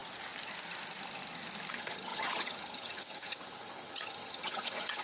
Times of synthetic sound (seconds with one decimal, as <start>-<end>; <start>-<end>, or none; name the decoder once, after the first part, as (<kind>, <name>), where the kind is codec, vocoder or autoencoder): 1.7-5.0 (vocoder, HiFi-GAN)